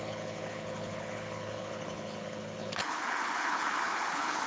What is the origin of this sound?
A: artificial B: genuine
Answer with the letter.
A